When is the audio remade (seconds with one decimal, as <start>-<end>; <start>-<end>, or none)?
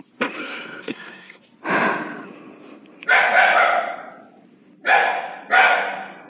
0.4-1.4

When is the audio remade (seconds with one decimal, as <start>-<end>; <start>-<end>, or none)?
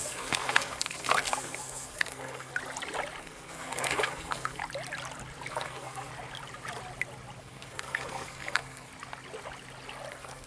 0.0-2.5; 3.2-4.6; 5.5-6.1; 7.4-8.9; 10.1-10.5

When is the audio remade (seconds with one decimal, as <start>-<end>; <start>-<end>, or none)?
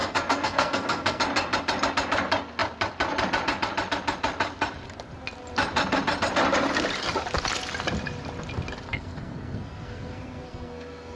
0.0-1.2; 8.9-11.2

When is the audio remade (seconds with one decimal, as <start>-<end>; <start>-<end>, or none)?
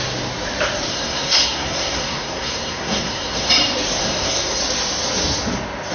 0.9-3.5; 4.0-4.6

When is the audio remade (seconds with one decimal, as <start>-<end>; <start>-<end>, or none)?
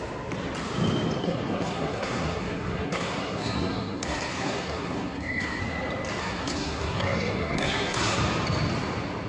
1.2-5.6; 6.2-8.2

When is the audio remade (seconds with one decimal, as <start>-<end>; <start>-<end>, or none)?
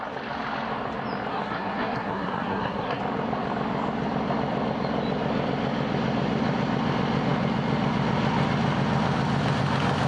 1.3-3.0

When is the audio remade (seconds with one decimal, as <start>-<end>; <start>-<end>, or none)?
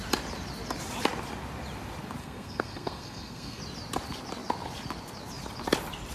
2.2-3.6